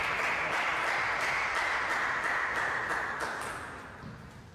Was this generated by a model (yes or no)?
no